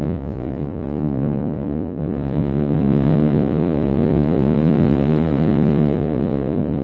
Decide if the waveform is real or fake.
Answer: fake